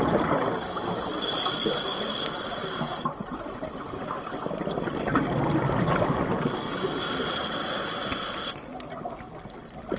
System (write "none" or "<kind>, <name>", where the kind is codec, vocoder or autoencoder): none